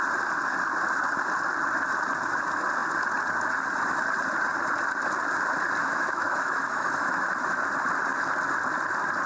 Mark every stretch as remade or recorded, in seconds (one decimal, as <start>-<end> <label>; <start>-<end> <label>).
0.0-5.8 recorded; 5.8-7.6 remade; 7.6-9.3 recorded